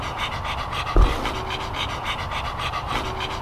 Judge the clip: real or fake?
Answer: real